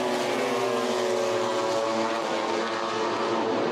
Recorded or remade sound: recorded